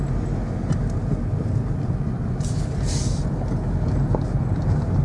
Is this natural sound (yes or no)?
yes